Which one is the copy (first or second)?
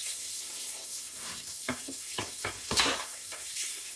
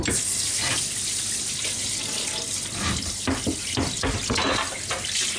first